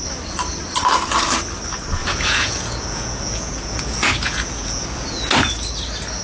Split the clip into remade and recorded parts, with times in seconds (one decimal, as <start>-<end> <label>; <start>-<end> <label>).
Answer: 0.0-2.0 recorded; 2.0-5.3 remade; 5.3-6.2 recorded